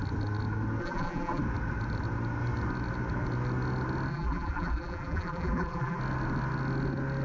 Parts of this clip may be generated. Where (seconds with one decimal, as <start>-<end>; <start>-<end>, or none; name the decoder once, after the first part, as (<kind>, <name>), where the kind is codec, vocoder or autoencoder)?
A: 0.8-1.4 (vocoder, BigVGAN v2); 4.1-6.0